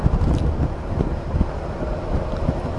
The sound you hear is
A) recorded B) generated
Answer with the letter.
A